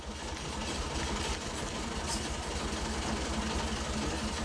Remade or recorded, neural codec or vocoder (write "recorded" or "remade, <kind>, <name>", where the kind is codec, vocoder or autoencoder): recorded